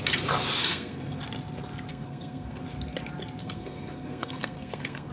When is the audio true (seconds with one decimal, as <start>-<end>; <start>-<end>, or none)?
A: 0.0-0.6; 1.2-1.9; 2.6-3.4